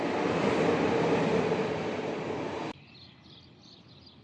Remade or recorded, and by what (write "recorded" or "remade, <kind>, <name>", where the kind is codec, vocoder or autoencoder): recorded